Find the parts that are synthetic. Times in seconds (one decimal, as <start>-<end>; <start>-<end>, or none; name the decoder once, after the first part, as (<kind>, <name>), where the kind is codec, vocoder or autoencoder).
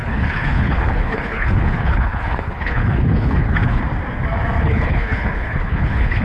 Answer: 0.0-3.8 (codec, HILCodec); 4.6-6.2